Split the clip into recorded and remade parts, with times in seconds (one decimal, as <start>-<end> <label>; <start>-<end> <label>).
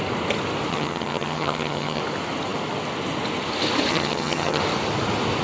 0.0-0.7 recorded; 0.7-2.0 remade; 2.0-3.9 recorded; 3.9-4.6 remade; 4.6-5.4 recorded